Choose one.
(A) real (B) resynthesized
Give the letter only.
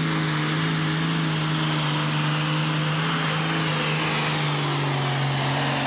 A